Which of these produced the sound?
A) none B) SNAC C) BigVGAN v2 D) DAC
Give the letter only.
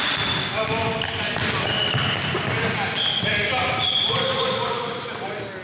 A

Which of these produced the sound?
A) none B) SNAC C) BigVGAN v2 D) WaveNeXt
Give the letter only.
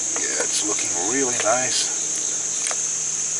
A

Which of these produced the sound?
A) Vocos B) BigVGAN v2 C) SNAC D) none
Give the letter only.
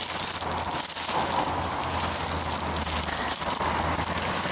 D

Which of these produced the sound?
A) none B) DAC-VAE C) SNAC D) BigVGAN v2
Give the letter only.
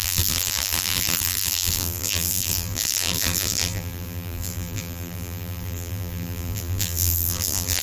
D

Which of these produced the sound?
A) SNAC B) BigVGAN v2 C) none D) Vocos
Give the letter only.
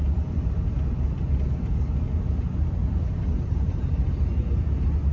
C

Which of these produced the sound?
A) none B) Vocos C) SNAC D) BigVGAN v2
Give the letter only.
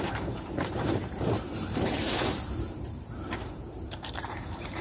D